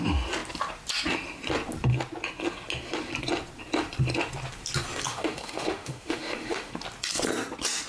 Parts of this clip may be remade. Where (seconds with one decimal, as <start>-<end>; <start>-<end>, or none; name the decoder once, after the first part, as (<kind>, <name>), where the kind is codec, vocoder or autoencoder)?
5.1-6.7 (autoencoder, DAC-VAE)